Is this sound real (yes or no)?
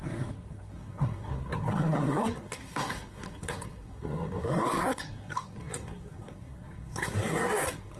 no